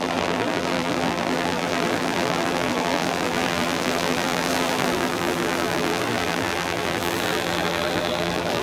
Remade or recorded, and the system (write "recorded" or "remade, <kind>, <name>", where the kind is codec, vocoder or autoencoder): remade, vocoder, BigVGAN v2